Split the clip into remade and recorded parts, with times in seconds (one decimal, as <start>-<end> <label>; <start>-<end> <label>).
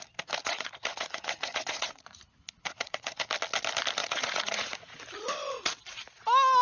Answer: 0.0-0.4 recorded; 0.4-3.3 remade; 3.3-4.0 recorded; 4.0-5.0 remade; 5.0-6.6 recorded